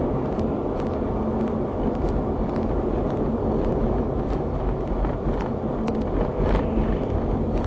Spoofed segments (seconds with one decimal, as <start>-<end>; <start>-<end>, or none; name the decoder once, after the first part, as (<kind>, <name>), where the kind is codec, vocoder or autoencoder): 3.7-4.9 (autoencoder, DAC-VAE)